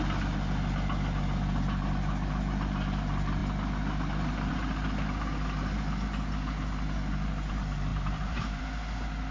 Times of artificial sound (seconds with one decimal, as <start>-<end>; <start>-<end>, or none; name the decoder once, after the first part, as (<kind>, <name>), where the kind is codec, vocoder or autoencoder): 7.9-8.6 (vocoder, BigVGAN v2)